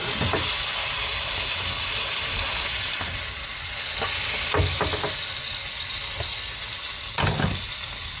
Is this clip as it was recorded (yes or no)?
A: yes